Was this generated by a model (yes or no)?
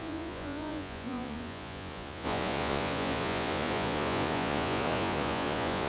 yes